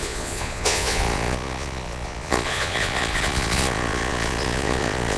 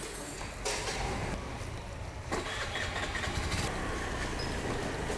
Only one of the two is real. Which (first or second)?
second